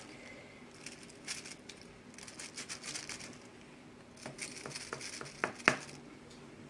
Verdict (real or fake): real